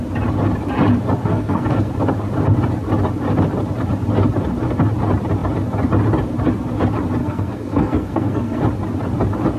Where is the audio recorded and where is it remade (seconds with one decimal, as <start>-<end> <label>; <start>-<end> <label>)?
0.0-1.3 recorded; 1.3-1.9 remade; 1.9-7.2 recorded; 7.2-8.6 remade; 8.6-9.6 recorded